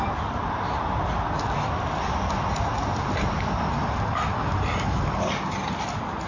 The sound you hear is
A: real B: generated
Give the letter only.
A